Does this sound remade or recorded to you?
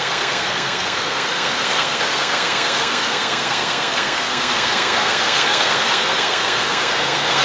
remade